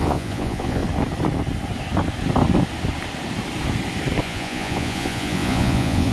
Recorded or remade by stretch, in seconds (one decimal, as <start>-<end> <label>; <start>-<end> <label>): 0.0-0.8 remade; 0.8-4.2 recorded; 4.2-6.1 remade